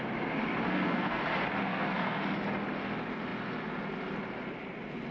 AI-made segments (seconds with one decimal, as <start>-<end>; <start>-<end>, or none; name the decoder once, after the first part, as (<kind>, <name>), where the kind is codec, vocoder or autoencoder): 0.7-1.2 (codec, SNAC); 1.6-2.2